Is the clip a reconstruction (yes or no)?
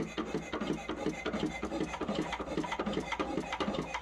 no